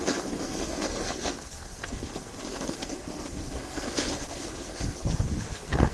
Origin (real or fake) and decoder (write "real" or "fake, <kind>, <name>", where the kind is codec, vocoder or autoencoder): fake, codec, SNAC